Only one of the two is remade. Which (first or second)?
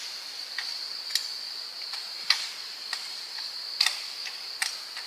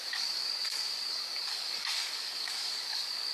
second